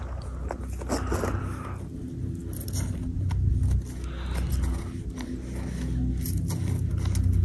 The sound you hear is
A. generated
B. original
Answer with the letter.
B